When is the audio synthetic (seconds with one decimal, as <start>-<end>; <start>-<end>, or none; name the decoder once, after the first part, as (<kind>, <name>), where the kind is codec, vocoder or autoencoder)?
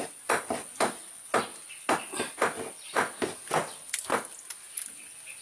none